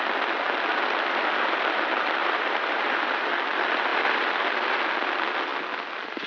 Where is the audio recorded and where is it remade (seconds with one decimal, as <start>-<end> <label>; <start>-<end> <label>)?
0.0-2.2 recorded; 2.2-3.4 remade; 3.4-3.9 recorded; 3.9-4.8 remade; 4.8-6.3 recorded

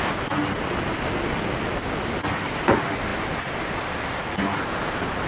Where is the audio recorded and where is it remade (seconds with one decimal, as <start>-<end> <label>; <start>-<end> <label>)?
0.0-5.3 recorded